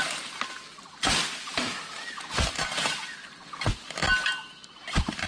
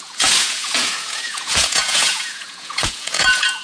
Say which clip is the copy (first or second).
second